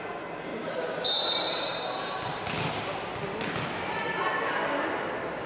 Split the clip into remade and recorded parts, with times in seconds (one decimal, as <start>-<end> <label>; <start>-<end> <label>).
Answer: 0.0-5.5 recorded